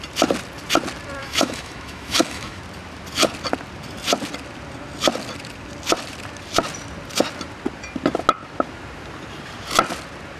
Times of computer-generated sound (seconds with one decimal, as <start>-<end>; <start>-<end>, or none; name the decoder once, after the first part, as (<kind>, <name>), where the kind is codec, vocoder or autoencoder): 1.2-2.6 (autoencoder, DAC-VAE)